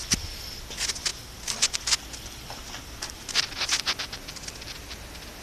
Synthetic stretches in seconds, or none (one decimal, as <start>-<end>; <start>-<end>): none